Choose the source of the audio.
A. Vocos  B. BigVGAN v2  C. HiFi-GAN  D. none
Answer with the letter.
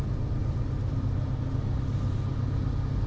D